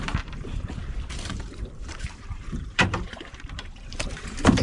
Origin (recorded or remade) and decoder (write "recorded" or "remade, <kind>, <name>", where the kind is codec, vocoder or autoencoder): remade, vocoder, BigVGAN v2